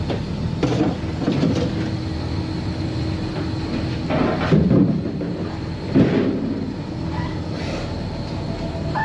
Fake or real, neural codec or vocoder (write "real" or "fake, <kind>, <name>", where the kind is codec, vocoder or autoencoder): real